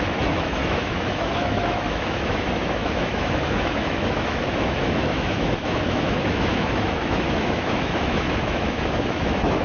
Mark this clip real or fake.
fake